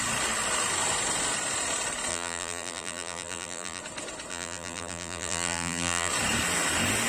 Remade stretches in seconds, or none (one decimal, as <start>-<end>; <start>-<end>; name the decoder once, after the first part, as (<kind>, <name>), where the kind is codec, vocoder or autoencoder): 2.1-3.8 (vocoder, BigVGAN v2); 4.3-6.1